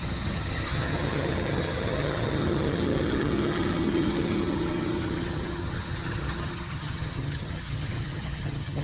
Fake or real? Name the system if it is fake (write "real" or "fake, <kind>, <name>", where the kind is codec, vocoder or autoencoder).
fake, vocoder, HiFi-GAN